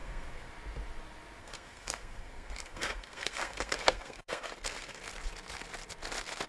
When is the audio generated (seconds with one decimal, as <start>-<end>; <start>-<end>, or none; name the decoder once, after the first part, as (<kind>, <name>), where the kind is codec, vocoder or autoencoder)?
0.0-0.5 (codec, SNAC); 1.4-5.0